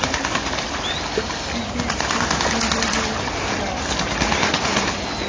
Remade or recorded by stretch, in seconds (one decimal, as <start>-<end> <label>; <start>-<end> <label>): 0.0-5.3 recorded